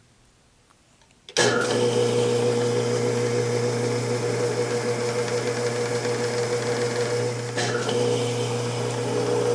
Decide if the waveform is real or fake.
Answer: real